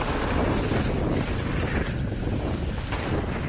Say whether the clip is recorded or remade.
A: remade